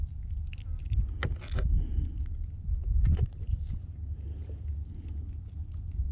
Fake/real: real